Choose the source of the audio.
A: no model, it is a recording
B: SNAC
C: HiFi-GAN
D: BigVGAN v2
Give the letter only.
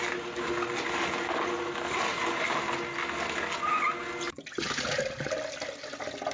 A